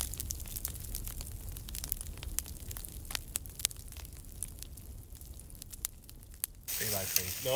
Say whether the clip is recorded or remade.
recorded